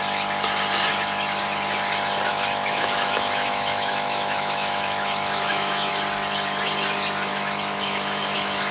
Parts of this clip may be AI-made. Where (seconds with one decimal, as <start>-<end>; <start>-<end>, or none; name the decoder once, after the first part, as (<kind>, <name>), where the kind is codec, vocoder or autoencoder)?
2.3-5.9 (autoencoder, DAC-VAE); 7.3-8.7